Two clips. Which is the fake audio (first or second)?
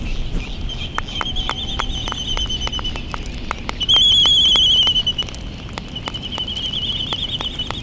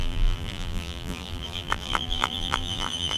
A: second